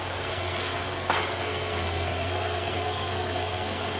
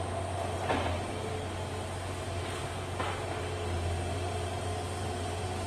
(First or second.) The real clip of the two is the second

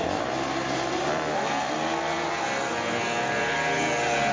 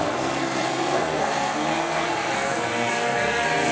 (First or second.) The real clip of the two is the first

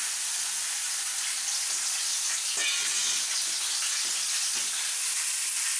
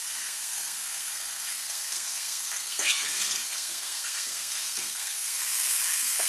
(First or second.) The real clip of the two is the first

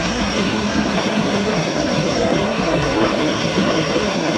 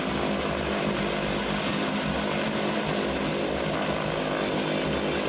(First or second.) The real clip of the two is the second